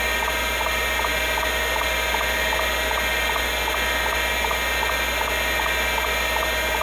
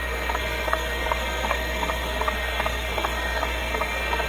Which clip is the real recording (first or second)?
first